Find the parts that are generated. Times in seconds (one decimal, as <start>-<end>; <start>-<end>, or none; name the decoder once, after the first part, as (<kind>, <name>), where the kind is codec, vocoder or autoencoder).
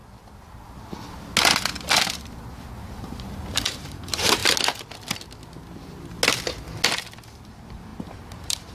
3.4-4.4 (vocoder, BigVGAN v2); 7.3-8.7